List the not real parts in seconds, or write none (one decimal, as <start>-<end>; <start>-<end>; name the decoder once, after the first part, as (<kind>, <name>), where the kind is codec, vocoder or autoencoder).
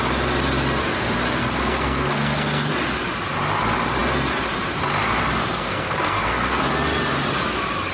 1.4-2.7 (codec, SNAC); 5.4-6.6